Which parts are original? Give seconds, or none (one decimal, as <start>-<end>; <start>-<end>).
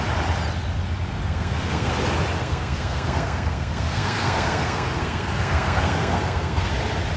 0.0-1.2; 1.9-2.4; 6.7-7.2